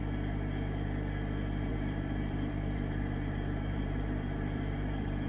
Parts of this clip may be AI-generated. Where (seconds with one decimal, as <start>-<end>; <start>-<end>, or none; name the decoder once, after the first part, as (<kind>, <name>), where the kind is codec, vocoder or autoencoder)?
1.7-5.3 (vocoder, BigVGAN v2)